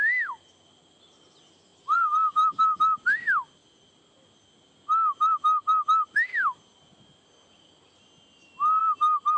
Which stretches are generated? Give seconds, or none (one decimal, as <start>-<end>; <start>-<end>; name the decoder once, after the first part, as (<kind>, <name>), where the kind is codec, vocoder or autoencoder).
1.7-2.8 (vocoder, BigVGAN v2)